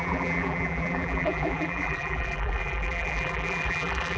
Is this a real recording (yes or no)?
no